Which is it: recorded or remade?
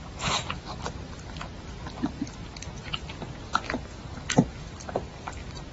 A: recorded